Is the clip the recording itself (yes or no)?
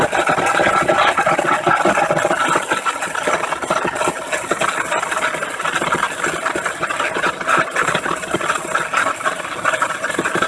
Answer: yes